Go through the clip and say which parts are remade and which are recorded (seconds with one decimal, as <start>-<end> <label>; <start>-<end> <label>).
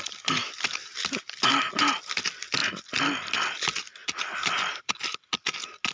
0.0-5.9 recorded